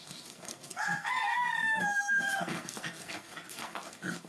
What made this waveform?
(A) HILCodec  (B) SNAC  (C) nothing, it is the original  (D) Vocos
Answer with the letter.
B